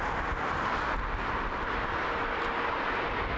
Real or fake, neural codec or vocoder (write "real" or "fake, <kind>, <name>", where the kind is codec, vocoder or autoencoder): real